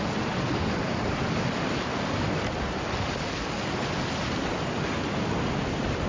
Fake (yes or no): no